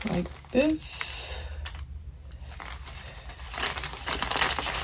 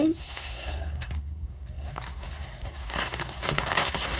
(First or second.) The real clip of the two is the first